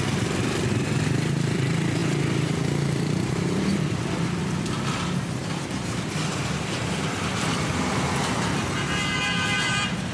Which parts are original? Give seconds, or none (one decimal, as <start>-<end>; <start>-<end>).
none